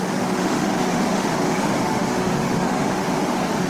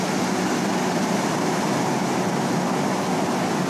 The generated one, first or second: first